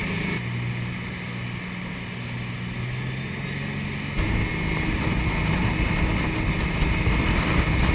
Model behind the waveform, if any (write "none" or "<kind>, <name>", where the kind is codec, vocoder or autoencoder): none